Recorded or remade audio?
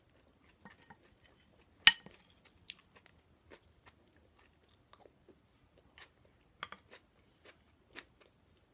recorded